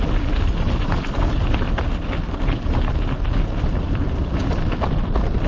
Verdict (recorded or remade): recorded